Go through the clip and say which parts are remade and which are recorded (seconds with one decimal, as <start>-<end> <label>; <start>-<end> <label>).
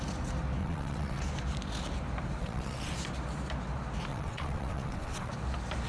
0.0-0.6 recorded; 0.6-1.2 remade; 1.2-2.4 recorded; 2.4-2.9 remade; 2.9-4.1 recorded; 4.1-5.3 remade; 5.3-5.9 recorded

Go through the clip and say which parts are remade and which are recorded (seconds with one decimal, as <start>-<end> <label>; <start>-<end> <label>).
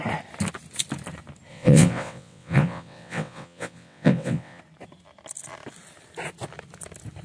0.0-1.5 recorded; 1.5-4.6 remade; 4.6-7.2 recorded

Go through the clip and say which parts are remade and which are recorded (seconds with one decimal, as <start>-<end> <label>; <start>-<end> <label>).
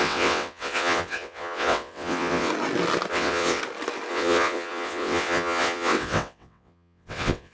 0.0-2.5 remade; 2.5-3.1 recorded; 3.1-3.6 remade; 3.6-4.1 recorded; 4.1-7.5 remade